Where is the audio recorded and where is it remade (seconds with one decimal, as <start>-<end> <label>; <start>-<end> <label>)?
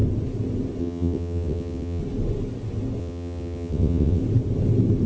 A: 0.0-0.8 recorded; 0.8-2.0 remade; 2.0-3.0 recorded; 3.0-4.2 remade; 4.2-5.1 recorded